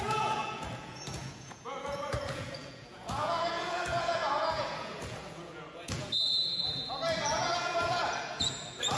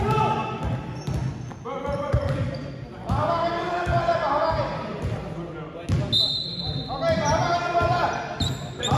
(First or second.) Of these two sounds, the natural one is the second